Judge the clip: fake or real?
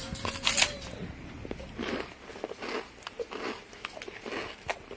real